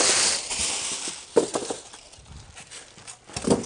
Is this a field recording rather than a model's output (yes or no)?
yes